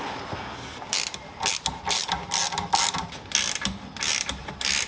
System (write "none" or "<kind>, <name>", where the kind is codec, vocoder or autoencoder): none